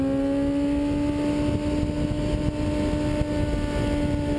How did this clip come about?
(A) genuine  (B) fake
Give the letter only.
A